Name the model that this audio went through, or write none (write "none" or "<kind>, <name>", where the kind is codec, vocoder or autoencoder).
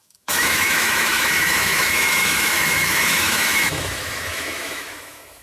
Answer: autoencoder, DAC-VAE